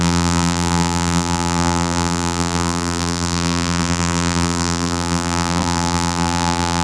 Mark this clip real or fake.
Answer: fake